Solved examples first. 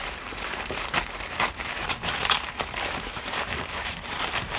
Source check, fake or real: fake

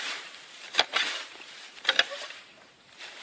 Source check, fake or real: fake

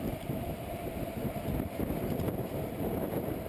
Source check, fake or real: fake